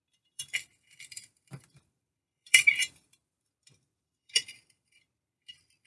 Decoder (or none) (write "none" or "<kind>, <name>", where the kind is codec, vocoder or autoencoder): vocoder, BigVGAN v2